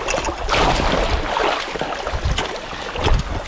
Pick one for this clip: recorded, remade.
recorded